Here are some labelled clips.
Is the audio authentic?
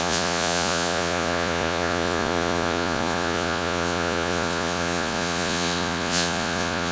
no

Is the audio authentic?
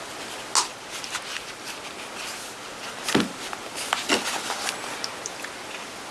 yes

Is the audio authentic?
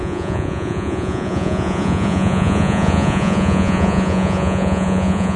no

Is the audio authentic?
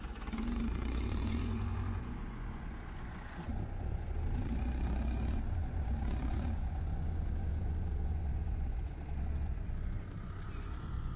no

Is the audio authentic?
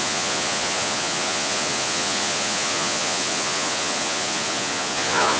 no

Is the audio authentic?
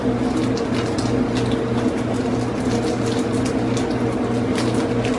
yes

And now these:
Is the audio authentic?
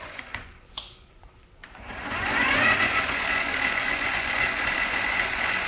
no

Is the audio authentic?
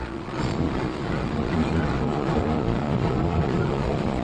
no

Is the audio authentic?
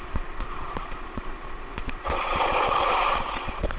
no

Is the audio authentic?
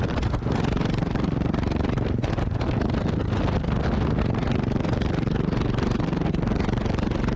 yes